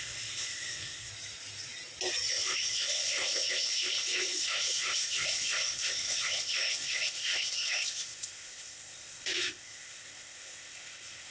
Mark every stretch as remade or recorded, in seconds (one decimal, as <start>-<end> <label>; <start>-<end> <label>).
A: 0.0-1.1 remade; 1.1-2.3 recorded; 2.3-11.3 remade

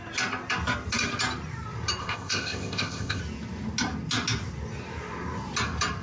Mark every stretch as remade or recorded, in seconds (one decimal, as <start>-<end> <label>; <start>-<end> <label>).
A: 0.0-2.0 recorded; 2.0-3.2 remade; 3.2-6.0 recorded

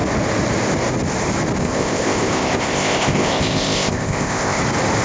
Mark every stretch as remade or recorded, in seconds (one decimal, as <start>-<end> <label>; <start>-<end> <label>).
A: 0.0-1.6 recorded; 1.6-4.6 remade; 4.6-5.0 recorded

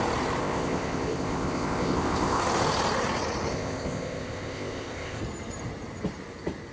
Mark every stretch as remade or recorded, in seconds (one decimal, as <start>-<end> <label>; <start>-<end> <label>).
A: 0.0-0.4 recorded; 0.4-2.4 remade; 2.4-3.5 recorded; 3.5-5.2 remade; 5.2-6.7 recorded

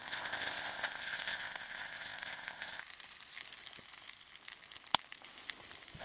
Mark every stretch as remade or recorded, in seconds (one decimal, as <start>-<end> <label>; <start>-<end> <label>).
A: 0.0-2.8 remade; 2.8-6.0 recorded

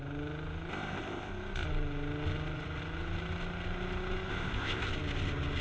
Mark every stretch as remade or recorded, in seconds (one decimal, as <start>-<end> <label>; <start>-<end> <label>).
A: 0.0-0.7 recorded; 0.7-1.3 remade; 1.3-4.3 recorded; 4.3-4.9 remade; 4.9-5.6 recorded

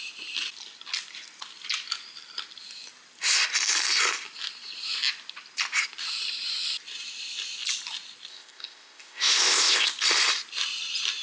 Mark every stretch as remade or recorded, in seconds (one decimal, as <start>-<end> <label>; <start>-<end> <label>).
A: 0.0-8.3 recorded; 8.3-9.9 remade; 9.9-11.2 recorded